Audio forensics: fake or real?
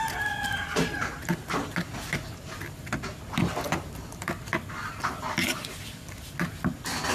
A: real